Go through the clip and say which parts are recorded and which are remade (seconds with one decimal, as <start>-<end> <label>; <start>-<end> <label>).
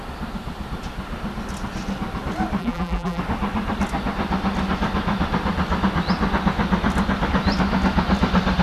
0.0-2.6 recorded; 2.6-3.2 remade; 3.2-8.6 recorded